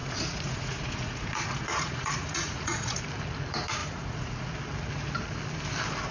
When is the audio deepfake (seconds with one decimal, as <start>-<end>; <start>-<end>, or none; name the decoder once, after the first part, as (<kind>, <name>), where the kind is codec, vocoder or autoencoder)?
0.0-3.0 (vocoder, Vocos); 3.8-4.5